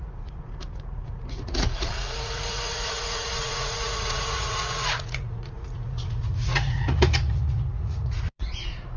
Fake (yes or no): yes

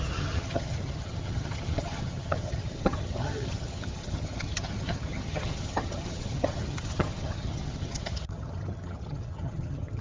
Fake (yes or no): yes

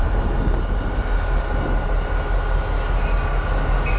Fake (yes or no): no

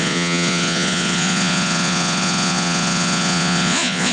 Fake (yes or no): yes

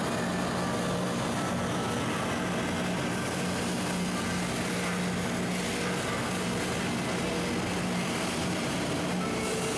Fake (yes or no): no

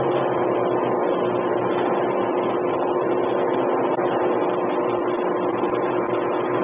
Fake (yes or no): no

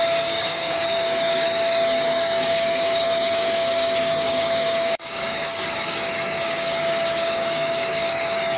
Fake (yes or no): yes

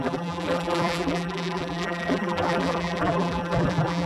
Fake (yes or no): yes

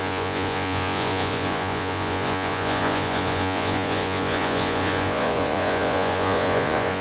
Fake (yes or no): yes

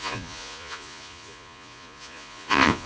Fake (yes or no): yes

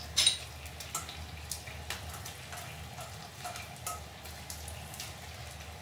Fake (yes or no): no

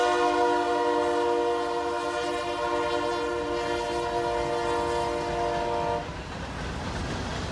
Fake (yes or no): no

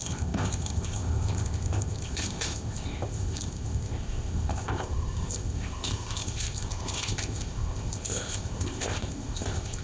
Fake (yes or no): yes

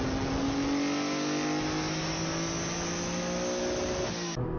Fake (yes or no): no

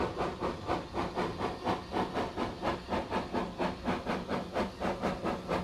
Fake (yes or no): no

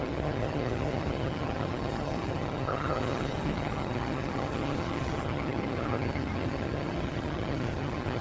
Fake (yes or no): yes